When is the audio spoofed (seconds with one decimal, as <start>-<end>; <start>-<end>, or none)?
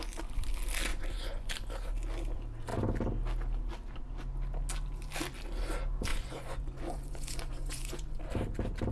0.9-1.5; 6.1-8.2